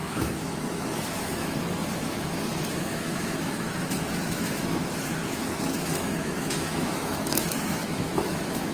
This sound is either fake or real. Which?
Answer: fake